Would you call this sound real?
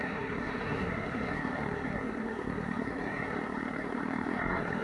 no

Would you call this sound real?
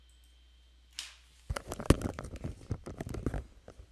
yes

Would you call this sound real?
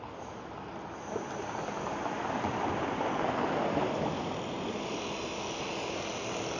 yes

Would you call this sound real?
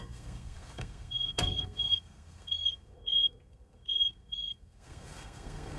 no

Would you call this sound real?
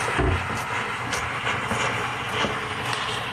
yes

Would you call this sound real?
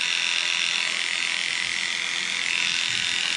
yes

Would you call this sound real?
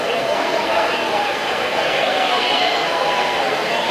no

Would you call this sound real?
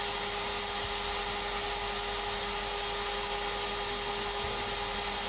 yes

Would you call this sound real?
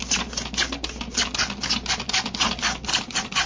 yes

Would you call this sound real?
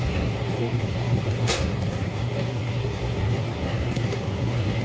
no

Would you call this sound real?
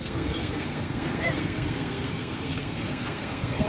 no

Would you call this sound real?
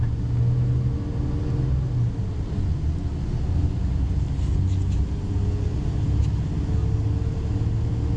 yes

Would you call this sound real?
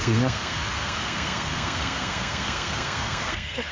no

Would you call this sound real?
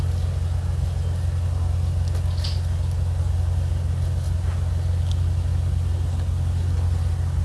yes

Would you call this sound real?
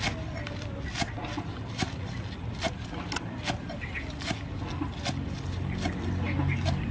yes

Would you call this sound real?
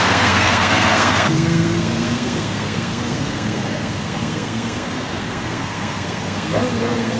no